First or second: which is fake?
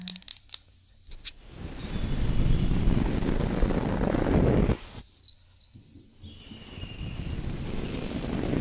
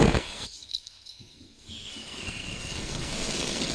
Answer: second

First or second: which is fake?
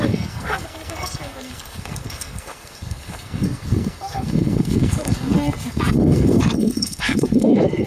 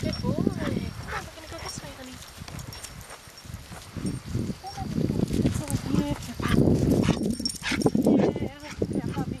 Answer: first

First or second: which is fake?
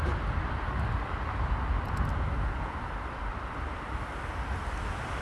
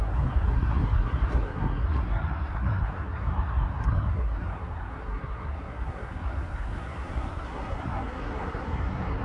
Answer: second